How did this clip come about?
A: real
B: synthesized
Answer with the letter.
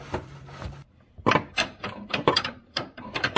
B